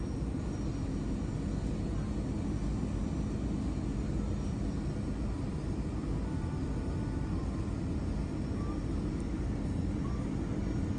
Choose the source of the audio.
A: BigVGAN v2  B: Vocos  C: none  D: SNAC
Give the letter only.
C